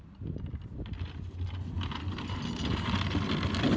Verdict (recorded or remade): recorded